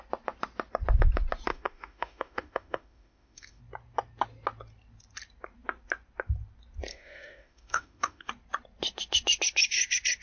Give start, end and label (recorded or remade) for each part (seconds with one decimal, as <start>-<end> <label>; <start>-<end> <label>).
0.0-1.5 recorded; 1.5-3.6 remade; 3.6-6.9 recorded; 6.9-8.3 remade; 8.3-10.2 recorded